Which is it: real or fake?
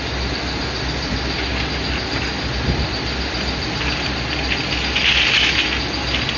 real